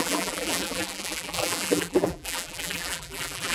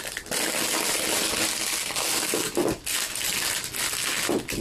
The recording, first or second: second